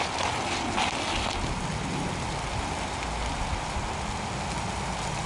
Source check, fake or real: real